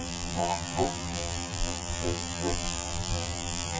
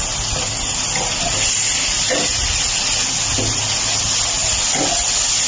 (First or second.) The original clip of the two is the second